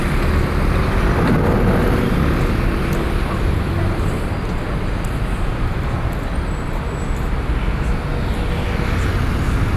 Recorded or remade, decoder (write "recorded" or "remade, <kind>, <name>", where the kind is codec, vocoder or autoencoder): recorded